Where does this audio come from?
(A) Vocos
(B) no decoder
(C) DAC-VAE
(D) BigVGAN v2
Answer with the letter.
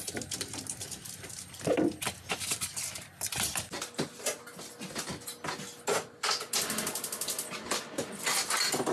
B